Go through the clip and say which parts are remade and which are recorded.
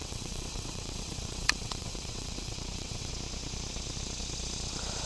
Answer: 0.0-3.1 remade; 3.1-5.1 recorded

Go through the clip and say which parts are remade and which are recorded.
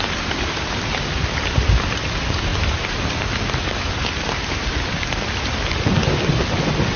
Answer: 0.0-7.0 recorded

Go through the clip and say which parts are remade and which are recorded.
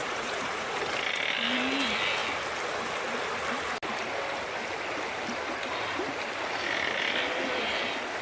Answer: 0.0-0.8 remade; 0.8-8.2 recorded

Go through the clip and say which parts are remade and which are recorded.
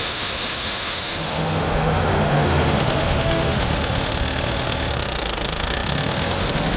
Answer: 0.0-6.8 remade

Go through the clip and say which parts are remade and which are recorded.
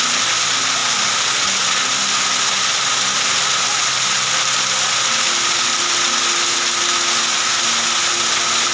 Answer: 0.0-8.7 recorded